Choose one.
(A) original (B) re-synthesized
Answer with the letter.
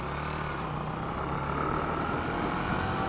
A